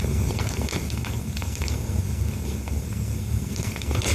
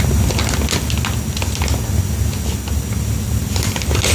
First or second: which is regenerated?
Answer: first